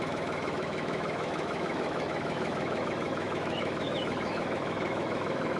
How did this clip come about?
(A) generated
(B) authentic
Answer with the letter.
A